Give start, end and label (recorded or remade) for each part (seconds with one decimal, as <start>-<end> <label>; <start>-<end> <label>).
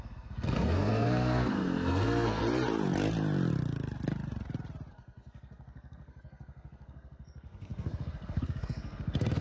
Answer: 0.0-2.4 remade; 2.4-4.9 recorded; 4.9-9.4 remade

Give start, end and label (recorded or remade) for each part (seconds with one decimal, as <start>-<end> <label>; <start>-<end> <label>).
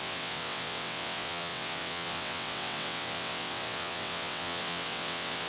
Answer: 0.0-5.5 remade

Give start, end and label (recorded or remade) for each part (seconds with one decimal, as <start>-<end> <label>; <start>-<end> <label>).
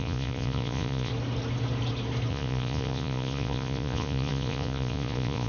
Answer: 0.0-1.1 remade; 1.1-2.3 recorded; 2.3-5.5 remade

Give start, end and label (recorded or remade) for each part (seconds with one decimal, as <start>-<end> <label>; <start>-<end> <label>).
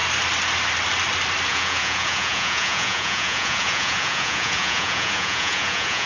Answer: 0.0-1.5 recorded; 1.5-6.1 remade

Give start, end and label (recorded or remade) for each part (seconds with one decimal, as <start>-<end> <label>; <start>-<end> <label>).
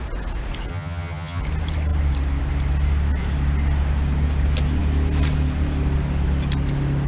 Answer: 0.0-0.7 recorded; 0.7-1.4 remade; 1.4-7.1 recorded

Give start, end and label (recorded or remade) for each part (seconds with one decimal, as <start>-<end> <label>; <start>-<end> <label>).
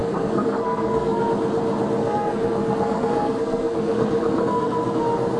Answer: 0.0-1.2 remade; 1.2-2.0 recorded; 2.0-5.0 remade; 5.0-5.4 recorded